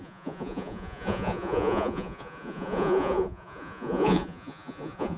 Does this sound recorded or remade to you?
remade